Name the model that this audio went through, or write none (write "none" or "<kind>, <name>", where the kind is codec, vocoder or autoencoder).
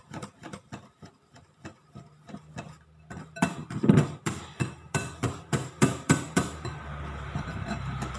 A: vocoder, BigVGAN v2